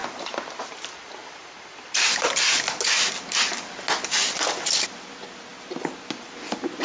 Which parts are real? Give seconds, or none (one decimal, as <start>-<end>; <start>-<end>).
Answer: 0.0-6.8